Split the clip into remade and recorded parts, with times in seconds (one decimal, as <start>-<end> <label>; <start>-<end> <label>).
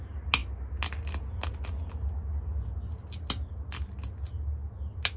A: 0.0-5.2 recorded